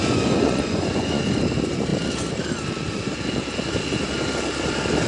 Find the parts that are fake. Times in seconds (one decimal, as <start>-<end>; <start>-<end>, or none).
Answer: 0.0-1.3